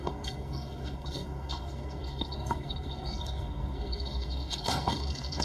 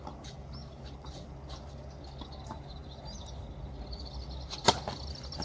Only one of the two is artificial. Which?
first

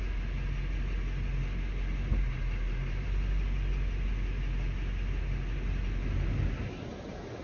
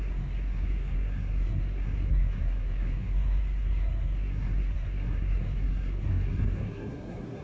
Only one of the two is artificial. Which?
second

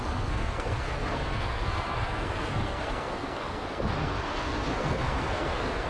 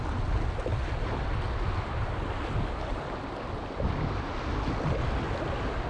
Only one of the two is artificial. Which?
first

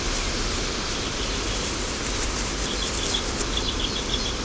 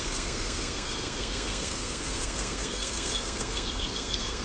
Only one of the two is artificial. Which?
second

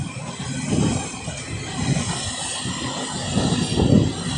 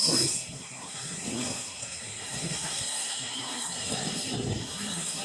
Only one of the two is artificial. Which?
second